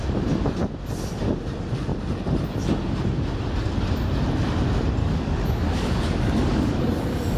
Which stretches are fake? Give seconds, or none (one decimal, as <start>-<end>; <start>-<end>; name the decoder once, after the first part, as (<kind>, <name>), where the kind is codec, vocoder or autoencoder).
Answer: 5.0-6.8 (codec, DAC)